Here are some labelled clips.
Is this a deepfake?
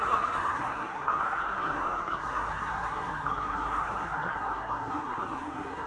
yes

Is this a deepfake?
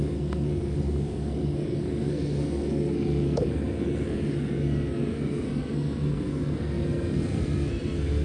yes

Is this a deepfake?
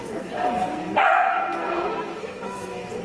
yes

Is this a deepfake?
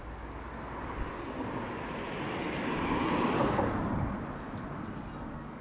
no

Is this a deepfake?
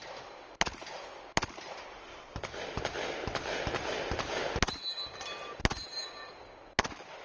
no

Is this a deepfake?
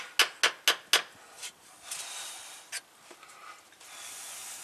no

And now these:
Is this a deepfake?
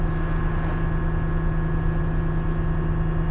no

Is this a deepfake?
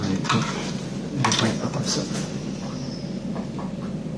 no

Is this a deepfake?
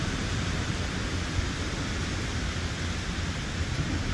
no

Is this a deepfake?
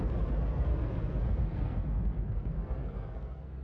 yes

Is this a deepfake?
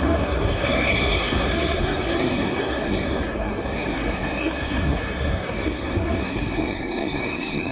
yes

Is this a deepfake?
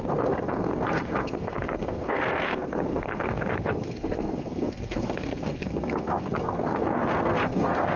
yes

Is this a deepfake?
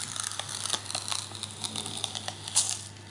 no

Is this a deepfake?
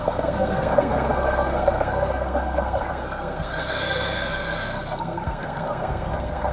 yes